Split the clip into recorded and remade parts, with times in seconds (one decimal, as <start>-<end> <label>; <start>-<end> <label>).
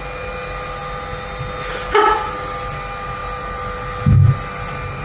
0.0-5.0 recorded